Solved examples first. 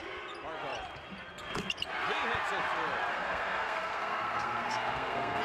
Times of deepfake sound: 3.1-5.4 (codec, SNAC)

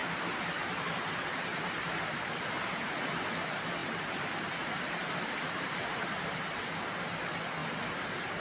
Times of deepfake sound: 1.5-2.8 (vocoder, BigVGAN v2); 3.8-6.5; 7.6-8.4

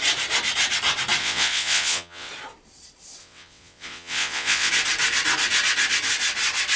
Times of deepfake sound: 1.2-2.3 (vocoder, WaveNeXt); 3.2-4.7